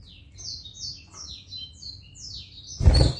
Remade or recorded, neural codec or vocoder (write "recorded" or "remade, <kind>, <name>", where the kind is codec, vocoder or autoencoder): recorded